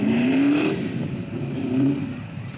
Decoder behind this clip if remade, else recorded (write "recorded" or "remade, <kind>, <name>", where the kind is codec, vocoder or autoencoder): remade, vocoder, BigVGAN v2